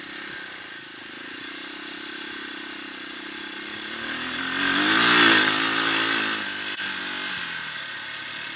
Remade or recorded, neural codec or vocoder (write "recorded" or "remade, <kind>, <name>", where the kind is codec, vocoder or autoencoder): recorded